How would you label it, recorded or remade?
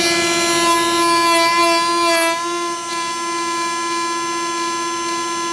recorded